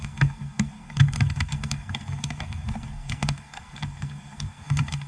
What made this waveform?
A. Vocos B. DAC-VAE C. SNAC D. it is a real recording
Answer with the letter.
C